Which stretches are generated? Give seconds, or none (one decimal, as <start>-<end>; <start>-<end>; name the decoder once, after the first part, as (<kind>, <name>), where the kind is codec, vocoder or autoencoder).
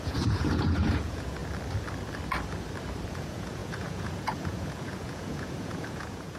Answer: 0.0-1.4 (vocoder, Vocos); 3.1-6.4